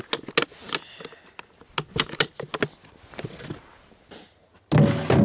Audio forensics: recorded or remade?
recorded